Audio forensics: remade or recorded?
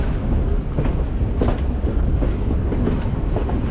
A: recorded